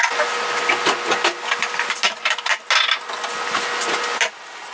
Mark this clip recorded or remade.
recorded